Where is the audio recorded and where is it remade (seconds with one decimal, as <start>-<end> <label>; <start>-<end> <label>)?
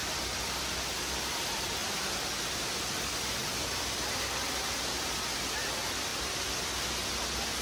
0.0-1.2 remade; 1.2-1.8 recorded; 1.8-2.5 remade; 2.5-3.4 recorded; 3.4-4.6 remade; 4.6-6.1 recorded; 6.1-6.9 remade; 6.9-7.6 recorded